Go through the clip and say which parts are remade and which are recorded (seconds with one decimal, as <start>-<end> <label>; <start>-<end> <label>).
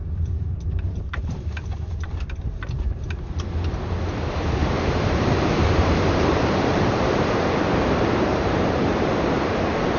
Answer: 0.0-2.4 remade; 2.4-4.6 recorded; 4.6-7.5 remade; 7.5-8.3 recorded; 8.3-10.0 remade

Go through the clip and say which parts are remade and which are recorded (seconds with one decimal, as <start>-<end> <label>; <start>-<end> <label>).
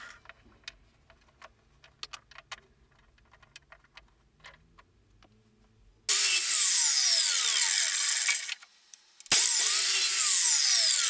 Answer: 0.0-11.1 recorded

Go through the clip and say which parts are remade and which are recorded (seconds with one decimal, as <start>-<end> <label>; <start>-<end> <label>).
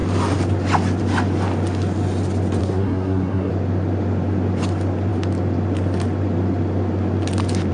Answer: 0.0-2.6 recorded; 2.6-3.5 remade; 3.5-7.7 recorded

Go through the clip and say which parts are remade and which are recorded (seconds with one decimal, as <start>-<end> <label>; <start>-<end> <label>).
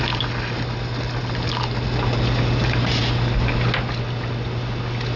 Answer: 0.0-5.2 recorded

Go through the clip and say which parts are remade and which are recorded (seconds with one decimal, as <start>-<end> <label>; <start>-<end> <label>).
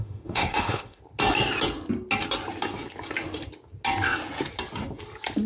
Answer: 0.0-1.0 remade; 1.0-5.5 recorded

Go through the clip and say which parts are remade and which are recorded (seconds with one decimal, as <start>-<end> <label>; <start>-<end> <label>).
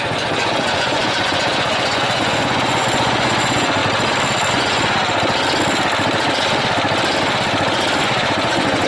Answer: 0.0-3.8 remade; 3.8-4.5 recorded; 4.5-5.0 remade; 5.0-8.0 recorded; 8.0-8.9 remade